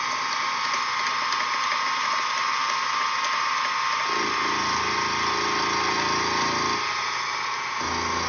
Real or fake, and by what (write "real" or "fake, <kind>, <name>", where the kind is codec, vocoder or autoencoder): real